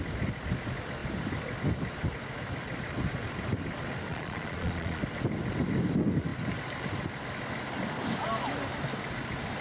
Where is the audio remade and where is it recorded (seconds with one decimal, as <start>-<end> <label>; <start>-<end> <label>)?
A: 0.0-4.1 recorded; 4.1-5.0 remade; 5.0-9.6 recorded